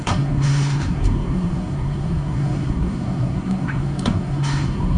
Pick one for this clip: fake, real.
fake